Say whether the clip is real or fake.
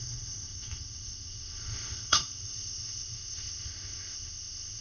fake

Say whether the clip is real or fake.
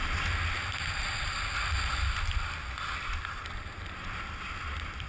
real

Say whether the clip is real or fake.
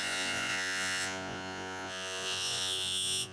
fake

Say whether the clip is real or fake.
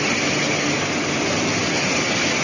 real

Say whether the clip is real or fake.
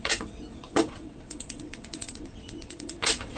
fake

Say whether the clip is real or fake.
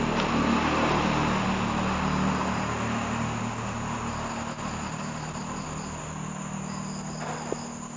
real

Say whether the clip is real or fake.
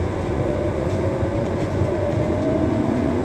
fake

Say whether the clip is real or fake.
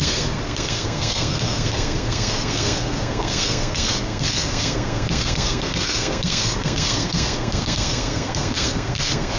fake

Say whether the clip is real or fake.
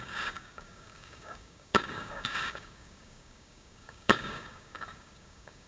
fake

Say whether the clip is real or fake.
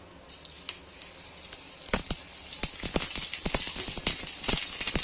real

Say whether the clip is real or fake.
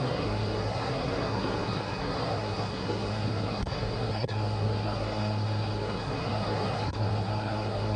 fake